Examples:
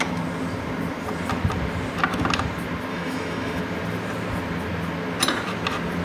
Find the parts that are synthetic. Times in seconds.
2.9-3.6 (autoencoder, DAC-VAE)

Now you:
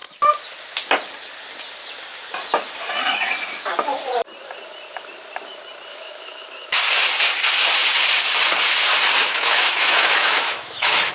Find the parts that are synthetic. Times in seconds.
5.9-6.8 (autoencoder, DAC-VAE); 9.2-11.1

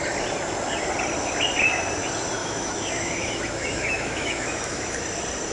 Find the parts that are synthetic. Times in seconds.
2.4-5.0 (autoencoder, DAC-VAE)

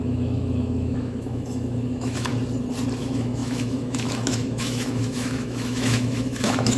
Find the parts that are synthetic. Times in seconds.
0.0-2.3 (autoencoder, DAC-VAE); 3.0-6.8

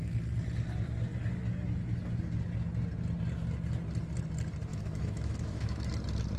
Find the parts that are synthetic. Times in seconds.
4.7-5.9 (autoencoder, DAC-VAE)

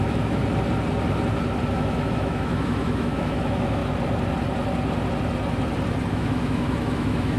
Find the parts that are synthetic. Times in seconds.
0.0-0.4 (autoencoder, DAC-VAE); 1.7-3.8; 6.1-7.4